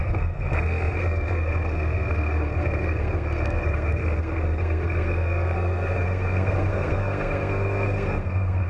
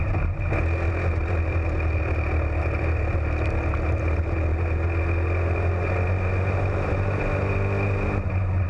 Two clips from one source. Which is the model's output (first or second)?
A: first